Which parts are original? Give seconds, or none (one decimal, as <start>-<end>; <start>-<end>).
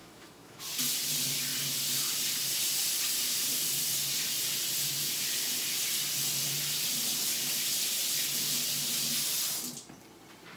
0.6-10.6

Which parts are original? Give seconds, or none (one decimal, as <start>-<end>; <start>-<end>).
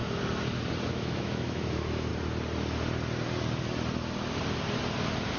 0.0-0.9; 2.1-5.4